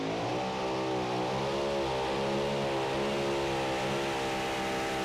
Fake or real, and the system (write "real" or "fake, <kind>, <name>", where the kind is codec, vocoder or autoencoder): real